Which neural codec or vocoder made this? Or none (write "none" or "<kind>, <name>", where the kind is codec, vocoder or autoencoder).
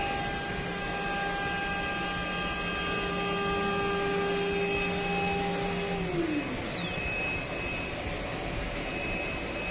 none